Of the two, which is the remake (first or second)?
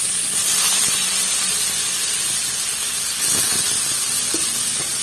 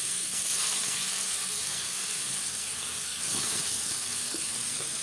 second